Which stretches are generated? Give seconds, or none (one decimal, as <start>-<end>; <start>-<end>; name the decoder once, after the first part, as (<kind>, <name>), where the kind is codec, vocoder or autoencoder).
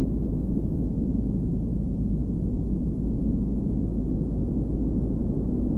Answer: none